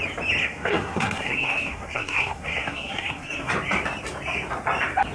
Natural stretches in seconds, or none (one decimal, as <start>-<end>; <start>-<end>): 0.0-0.4; 3.5-5.1